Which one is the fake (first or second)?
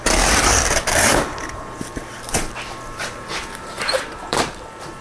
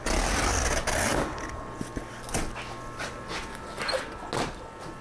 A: first